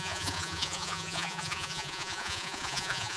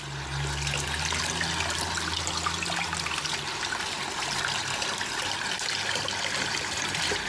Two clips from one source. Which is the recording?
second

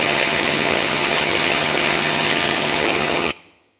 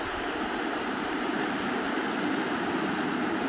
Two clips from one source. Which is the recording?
second